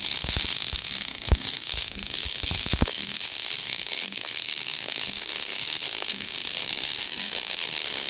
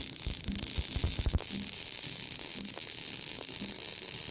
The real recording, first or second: second